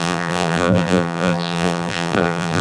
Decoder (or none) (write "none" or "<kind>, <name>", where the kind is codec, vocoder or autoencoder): vocoder, BigVGAN v2